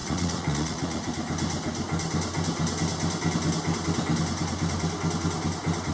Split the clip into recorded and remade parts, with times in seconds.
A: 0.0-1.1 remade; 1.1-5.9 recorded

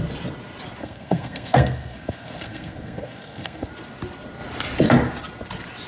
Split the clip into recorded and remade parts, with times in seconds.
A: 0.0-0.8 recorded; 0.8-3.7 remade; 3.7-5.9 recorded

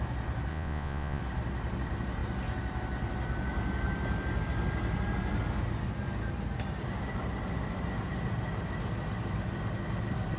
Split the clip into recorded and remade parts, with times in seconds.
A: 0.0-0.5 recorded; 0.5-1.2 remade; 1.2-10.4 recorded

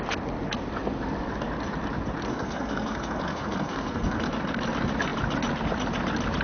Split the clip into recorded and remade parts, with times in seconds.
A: 0.0-2.3 recorded; 2.3-4.3 remade; 4.3-6.4 recorded